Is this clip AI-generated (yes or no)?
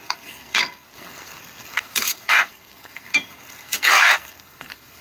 yes